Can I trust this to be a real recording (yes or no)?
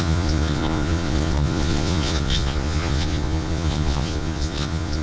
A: no